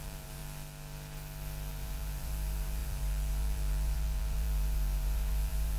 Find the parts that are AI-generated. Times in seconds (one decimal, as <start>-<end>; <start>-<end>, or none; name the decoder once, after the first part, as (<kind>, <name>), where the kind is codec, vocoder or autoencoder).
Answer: 0.0-0.4 (vocoder, BigVGAN v2); 1.7-5.8